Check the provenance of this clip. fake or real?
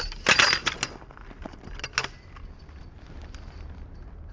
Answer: real